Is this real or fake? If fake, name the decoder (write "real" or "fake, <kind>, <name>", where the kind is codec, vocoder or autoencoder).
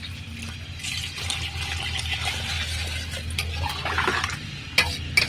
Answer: real